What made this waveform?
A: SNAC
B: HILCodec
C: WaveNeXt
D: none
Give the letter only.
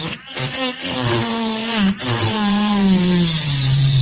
C